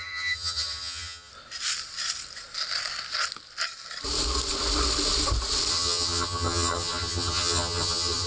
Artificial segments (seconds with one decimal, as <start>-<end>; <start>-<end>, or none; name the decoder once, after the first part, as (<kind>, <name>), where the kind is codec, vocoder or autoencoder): 0.0-1.3 (vocoder, HiFi-GAN); 5.7-8.3